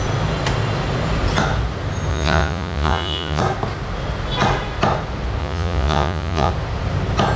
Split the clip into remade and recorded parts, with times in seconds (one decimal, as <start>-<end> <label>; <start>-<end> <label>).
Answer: 0.0-2.1 recorded; 2.1-3.4 remade; 3.4-5.4 recorded; 5.4-6.5 remade; 6.5-7.4 recorded